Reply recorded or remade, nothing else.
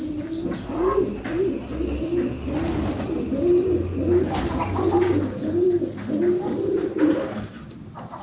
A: recorded